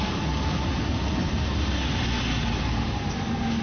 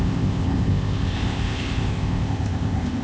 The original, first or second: first